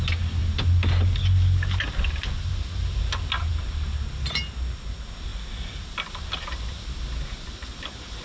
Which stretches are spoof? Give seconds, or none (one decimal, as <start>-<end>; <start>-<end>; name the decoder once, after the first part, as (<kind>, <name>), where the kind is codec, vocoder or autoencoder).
none